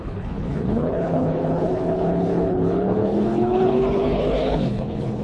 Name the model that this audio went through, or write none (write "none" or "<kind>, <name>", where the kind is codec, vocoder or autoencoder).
codec, HILCodec